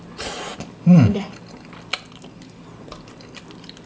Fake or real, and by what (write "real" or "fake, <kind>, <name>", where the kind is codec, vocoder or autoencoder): real